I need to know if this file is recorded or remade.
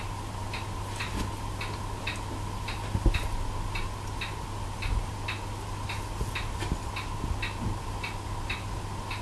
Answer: recorded